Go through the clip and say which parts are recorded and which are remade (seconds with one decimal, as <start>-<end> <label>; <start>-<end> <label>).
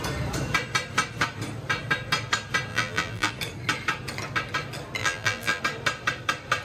0.0-2.7 recorded; 2.7-3.3 remade; 3.3-5.0 recorded; 5.0-5.6 remade; 5.6-6.6 recorded